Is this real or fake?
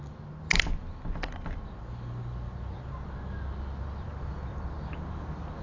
real